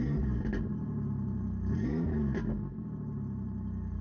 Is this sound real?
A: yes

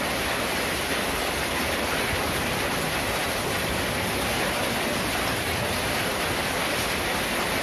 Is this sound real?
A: yes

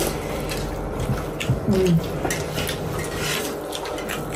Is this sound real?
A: yes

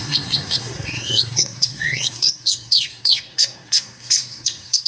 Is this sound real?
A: no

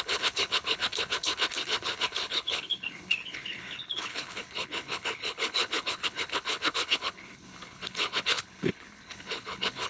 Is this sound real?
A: no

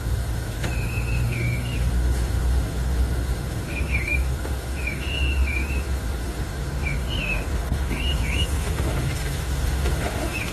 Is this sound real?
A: no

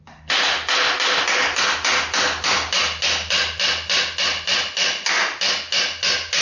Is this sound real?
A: yes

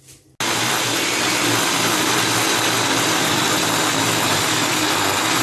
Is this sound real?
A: yes